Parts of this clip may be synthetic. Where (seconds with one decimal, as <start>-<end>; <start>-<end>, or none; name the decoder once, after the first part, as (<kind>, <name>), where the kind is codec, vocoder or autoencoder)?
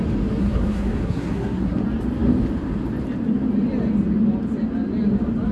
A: 0.4-1.8 (codec, SNAC)